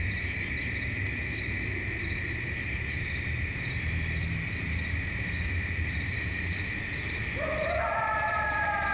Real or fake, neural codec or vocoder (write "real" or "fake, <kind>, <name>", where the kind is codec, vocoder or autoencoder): fake, vocoder, BigVGAN v2